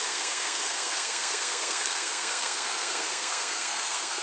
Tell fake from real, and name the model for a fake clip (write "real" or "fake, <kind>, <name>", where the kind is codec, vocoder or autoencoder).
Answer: fake, codec, SNAC